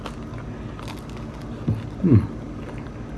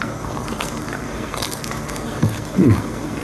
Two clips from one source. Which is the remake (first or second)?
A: second